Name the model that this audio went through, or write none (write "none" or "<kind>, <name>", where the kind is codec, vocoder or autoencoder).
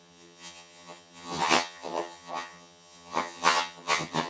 vocoder, HiFi-GAN